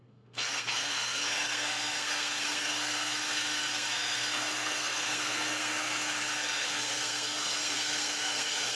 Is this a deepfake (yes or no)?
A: yes